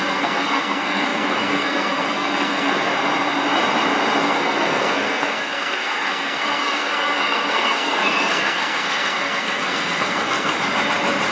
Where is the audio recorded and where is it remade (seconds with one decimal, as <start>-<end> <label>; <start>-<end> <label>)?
0.0-2.9 remade; 2.9-4.2 recorded; 4.2-10.5 remade; 10.5-11.3 recorded